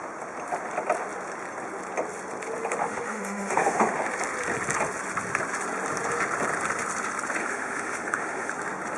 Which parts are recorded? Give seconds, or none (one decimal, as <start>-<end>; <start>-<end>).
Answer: 0.0-2.8; 4.0-7.4; 8.5-9.0